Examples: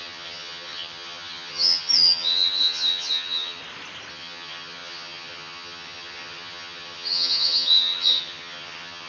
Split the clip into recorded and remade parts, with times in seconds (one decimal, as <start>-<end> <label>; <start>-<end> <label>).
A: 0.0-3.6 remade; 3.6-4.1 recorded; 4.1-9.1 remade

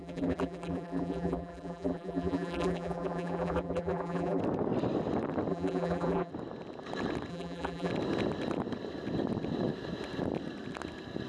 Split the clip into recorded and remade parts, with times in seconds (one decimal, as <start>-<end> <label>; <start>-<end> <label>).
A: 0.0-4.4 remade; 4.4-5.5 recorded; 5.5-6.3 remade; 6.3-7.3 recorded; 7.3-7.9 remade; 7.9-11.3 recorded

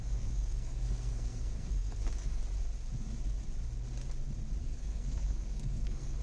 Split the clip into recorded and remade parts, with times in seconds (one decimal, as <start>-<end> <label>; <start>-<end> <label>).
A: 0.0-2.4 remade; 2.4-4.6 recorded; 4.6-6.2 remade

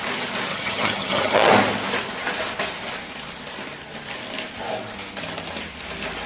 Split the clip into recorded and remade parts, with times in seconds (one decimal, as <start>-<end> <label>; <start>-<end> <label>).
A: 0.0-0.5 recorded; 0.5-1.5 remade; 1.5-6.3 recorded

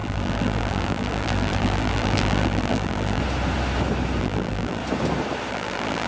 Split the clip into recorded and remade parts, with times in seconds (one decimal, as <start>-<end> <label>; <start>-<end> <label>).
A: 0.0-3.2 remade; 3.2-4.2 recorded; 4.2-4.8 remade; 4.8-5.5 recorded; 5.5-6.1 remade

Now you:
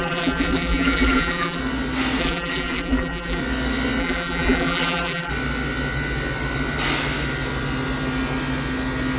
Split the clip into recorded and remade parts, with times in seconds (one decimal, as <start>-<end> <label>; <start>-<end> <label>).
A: 0.0-1.6 remade; 1.6-2.2 recorded; 2.2-3.4 remade; 3.4-4.0 recorded; 4.0-5.3 remade; 5.3-9.2 recorded

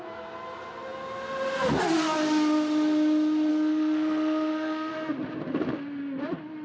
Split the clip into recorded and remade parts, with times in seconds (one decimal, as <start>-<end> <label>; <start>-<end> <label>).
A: 0.0-3.5 recorded; 3.5-4.9 remade; 4.9-6.6 recorded